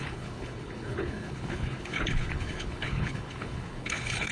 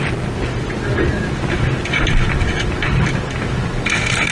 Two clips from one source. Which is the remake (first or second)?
first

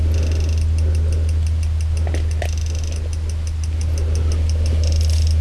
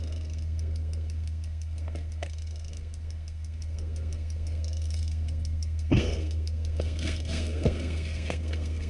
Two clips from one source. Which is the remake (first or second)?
second